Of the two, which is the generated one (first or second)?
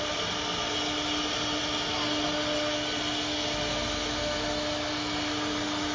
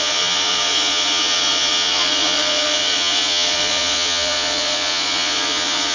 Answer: second